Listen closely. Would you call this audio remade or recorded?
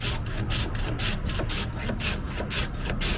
recorded